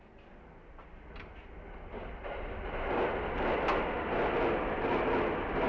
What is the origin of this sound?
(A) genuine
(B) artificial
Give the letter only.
A